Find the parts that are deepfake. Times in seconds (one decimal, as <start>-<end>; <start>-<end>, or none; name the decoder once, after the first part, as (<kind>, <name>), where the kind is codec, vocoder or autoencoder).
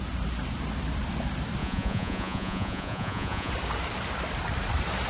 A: 1.6-3.5 (vocoder, Vocos)